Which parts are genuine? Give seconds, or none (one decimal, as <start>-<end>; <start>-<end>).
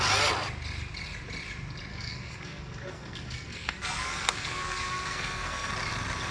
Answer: 0.0-1.9; 5.7-6.3